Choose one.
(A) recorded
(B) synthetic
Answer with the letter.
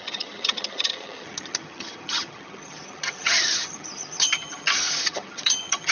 B